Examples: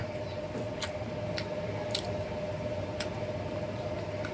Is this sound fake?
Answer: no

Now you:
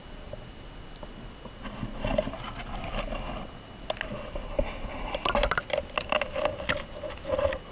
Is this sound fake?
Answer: no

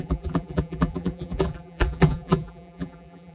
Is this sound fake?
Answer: yes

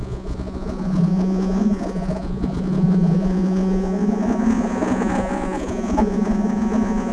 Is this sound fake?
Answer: yes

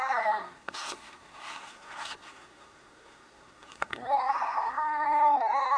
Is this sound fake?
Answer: yes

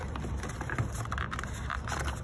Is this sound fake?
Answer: no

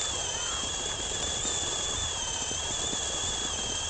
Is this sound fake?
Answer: no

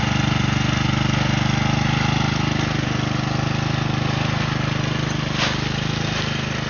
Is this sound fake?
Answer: no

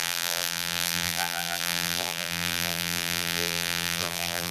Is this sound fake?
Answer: yes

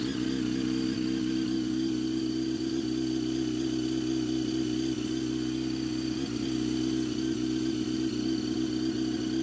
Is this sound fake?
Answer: no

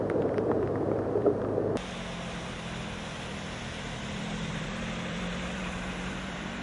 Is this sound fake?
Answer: yes